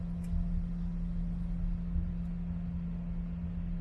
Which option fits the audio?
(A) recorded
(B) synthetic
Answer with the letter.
A